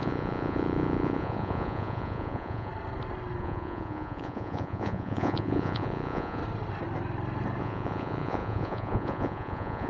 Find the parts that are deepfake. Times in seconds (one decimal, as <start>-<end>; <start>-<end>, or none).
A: 0.0-2.7; 3.4-6.4; 7.6-9.9